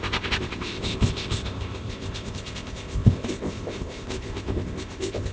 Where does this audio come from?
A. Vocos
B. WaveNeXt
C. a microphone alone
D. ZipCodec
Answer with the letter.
D